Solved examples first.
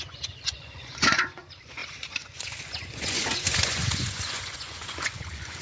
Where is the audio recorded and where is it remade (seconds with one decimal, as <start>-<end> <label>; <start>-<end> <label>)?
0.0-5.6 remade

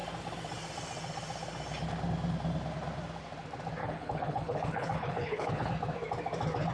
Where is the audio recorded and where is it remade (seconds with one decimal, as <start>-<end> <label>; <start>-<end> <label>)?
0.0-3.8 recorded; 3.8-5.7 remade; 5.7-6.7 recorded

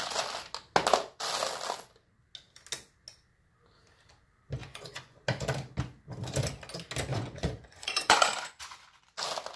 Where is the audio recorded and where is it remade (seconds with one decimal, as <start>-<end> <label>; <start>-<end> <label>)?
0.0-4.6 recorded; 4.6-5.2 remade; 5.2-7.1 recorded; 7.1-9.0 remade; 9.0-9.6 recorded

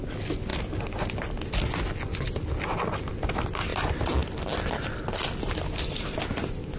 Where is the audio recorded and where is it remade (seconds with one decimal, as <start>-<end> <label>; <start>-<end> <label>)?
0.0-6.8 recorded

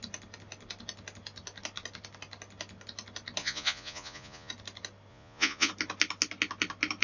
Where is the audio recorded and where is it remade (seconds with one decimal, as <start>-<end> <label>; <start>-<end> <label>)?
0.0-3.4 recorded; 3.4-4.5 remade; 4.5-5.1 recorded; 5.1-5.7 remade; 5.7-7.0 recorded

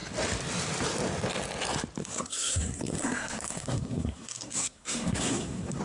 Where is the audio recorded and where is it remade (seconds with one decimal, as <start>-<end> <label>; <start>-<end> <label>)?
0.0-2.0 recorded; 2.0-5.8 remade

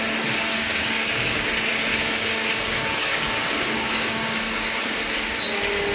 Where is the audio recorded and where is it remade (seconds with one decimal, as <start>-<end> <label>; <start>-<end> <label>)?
0.0-0.5 recorded; 0.5-1.5 remade; 1.5-1.9 recorded; 1.9-4.8 remade; 4.8-5.9 recorded